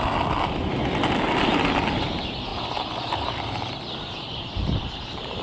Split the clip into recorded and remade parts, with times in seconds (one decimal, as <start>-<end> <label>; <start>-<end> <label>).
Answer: 0.0-2.5 recorded; 2.5-3.7 remade; 3.7-5.4 recorded